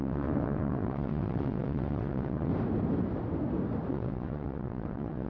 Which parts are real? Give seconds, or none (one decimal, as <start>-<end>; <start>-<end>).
2.5-3.9